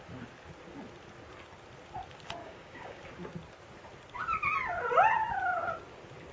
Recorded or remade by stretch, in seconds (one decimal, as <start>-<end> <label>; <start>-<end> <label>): 0.0-2.4 recorded; 2.4-3.0 remade; 3.0-6.3 recorded